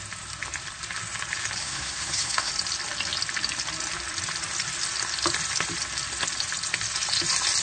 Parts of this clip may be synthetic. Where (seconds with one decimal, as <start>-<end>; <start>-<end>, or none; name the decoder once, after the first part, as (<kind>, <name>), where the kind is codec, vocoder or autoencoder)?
1.6-2.5 (codec, SNAC)